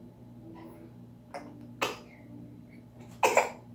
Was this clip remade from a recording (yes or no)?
no